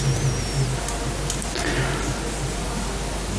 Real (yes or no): yes